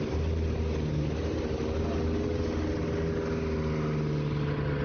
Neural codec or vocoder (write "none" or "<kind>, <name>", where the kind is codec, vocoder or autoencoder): none